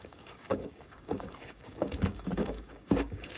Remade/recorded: remade